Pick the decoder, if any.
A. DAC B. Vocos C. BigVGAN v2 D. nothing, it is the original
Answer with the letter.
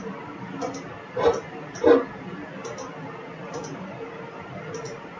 D